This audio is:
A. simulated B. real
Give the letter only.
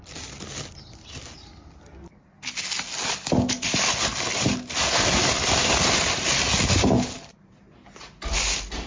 B